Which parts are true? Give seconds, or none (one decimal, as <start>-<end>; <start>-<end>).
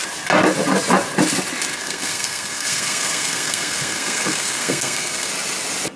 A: 0.0-1.7; 5.3-6.0